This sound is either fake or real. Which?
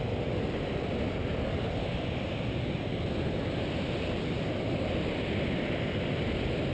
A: real